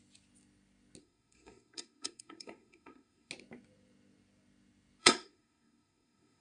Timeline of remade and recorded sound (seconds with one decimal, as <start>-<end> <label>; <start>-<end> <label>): 0.0-1.0 recorded; 1.0-3.3 remade; 3.3-5.0 recorded; 5.0-6.4 remade